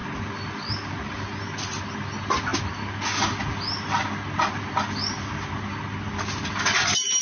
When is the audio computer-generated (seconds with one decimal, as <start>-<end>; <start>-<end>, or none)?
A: none